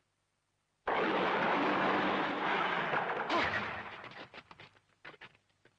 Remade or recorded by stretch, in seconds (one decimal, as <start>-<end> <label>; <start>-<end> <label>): 0.0-0.8 recorded; 0.8-2.6 remade; 2.6-5.8 recorded